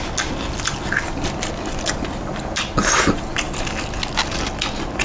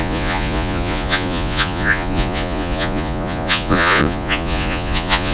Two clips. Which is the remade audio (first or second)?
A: second